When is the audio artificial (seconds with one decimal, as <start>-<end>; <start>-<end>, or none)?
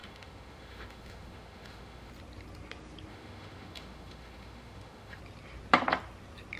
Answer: 0.0-2.1; 3.1-5.2